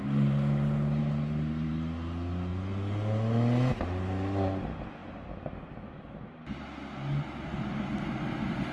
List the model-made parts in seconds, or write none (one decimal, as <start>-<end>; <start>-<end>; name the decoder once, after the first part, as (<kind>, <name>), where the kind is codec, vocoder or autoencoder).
1.0-1.7 (vocoder, BigVGAN v2)